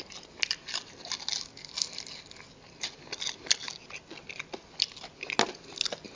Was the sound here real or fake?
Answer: real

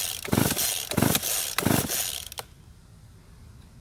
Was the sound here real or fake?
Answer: real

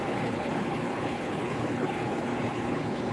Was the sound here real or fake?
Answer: fake